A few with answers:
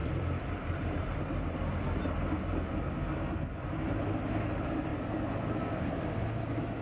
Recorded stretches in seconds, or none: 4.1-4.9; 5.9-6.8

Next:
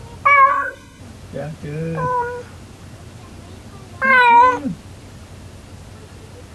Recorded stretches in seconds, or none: 0.0-0.5; 1.0-6.5

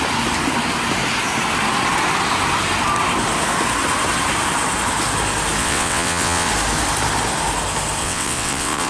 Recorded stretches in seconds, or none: 0.0-5.6; 6.5-8.0

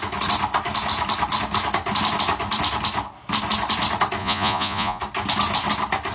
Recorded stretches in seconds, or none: 0.0-4.2; 5.0-6.1

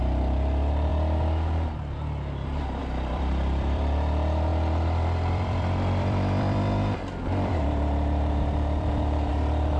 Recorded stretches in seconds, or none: 0.9-2.8

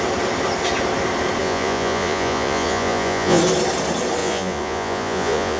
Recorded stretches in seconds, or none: 0.0-1.4; 3.4-4.2

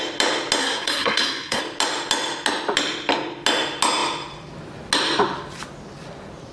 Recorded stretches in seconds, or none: 0.0-0.6; 1.6-6.5

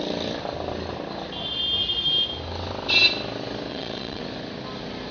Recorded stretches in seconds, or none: 0.0-3.7; 4.2-5.1